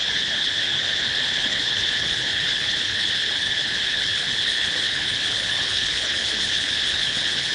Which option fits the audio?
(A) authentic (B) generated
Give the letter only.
B